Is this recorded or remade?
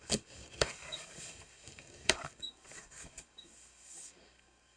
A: remade